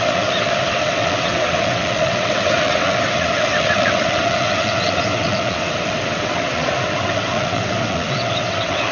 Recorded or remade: remade